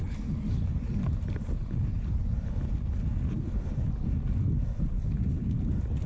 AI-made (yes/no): no